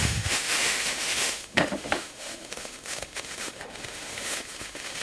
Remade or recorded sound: remade